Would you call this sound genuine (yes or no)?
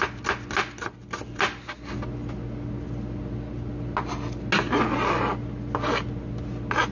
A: yes